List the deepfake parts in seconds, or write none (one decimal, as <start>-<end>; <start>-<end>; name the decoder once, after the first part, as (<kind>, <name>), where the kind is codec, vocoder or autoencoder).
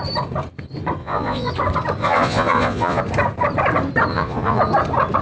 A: 1.0-1.5 (vocoder, Vocos); 2.0-3.0; 4.1-4.6